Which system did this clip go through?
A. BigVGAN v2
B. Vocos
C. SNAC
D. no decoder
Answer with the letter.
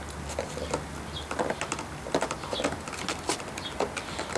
D